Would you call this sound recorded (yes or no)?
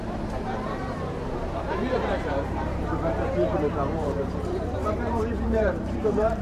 no